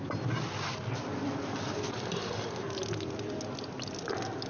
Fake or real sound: real